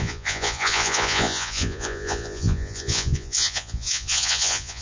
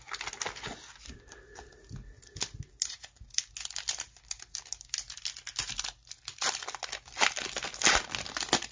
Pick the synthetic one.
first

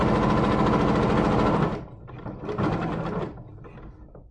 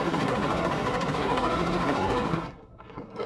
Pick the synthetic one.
second